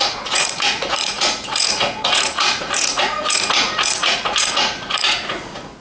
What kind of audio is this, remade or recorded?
remade